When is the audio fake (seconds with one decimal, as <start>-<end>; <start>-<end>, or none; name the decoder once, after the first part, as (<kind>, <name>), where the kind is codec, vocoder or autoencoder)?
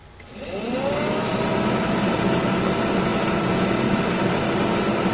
none